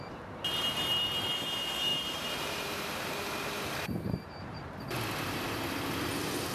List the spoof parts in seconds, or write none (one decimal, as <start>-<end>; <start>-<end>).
1.9-4.8